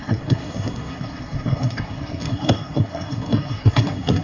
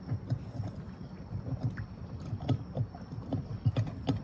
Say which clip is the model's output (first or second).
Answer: first